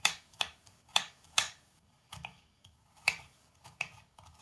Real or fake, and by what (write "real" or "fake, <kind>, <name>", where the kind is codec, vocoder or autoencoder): fake, codec, DAC